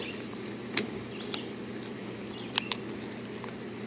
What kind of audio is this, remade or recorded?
recorded